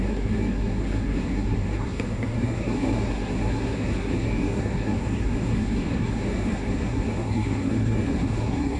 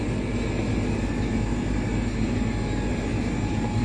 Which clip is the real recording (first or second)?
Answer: second